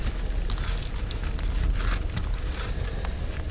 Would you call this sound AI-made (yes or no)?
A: no